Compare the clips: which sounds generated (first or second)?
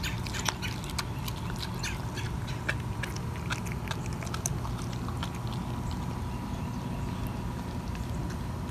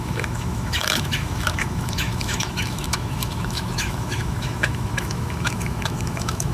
second